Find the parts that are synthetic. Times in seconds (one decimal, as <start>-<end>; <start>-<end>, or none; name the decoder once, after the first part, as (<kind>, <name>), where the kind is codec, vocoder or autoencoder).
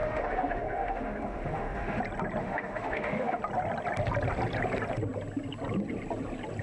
0.0-2.0 (autoencoder, DAC-VAE); 2.4-3.4